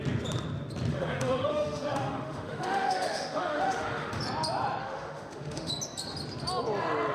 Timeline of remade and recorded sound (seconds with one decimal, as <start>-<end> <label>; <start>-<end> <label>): 0.0-0.9 recorded; 0.9-4.2 remade; 4.2-4.8 recorded; 4.8-5.7 remade; 5.7-7.1 recorded